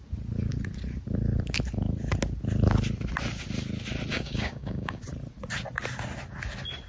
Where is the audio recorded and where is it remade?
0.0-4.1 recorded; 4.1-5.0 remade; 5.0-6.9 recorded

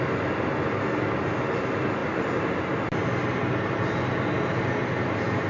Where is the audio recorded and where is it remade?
0.0-5.5 recorded

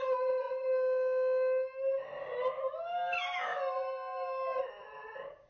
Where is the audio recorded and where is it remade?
0.0-5.5 recorded

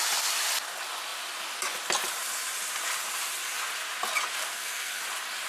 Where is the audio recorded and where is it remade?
0.0-4.5 recorded; 4.5-5.0 remade; 5.0-5.5 recorded

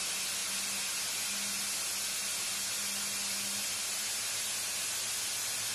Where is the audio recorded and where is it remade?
0.0-5.7 recorded

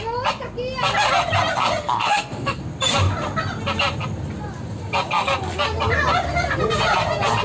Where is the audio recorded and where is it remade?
0.0-1.8 recorded; 1.8-2.6 remade; 2.6-7.4 recorded

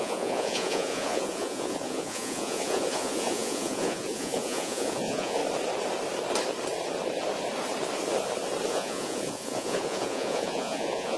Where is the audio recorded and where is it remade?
0.0-5.4 remade; 5.4-8.7 recorded; 8.7-11.2 remade